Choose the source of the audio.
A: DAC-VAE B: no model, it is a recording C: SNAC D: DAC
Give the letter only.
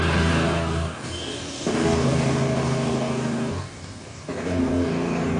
D